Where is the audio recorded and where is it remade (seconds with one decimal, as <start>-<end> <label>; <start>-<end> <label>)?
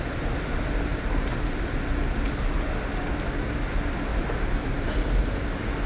0.0-0.9 recorded; 0.9-1.9 remade; 1.9-4.1 recorded; 4.1-4.7 remade; 4.7-5.9 recorded